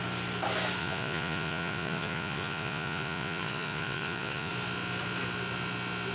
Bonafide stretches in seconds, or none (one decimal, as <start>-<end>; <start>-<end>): 0.0-0.8; 4.5-6.1